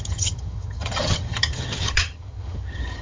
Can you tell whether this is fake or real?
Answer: fake